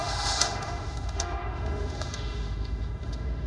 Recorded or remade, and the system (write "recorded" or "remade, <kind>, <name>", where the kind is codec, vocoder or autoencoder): remade, autoencoder, DAC-VAE